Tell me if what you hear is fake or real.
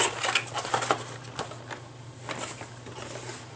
real